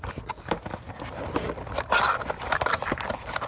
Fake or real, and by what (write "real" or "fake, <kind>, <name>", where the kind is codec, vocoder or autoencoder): real